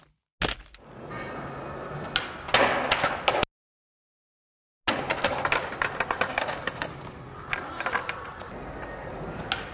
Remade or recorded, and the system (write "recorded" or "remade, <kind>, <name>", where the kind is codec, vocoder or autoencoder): recorded